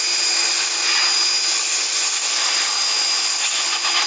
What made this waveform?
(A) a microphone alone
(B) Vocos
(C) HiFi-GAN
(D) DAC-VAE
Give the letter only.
A